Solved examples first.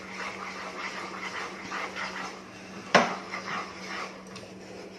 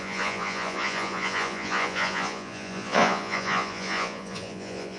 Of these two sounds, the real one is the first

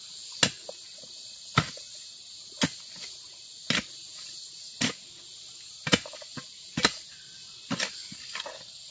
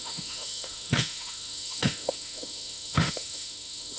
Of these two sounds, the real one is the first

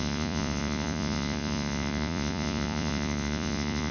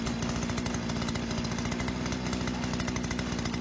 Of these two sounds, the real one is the second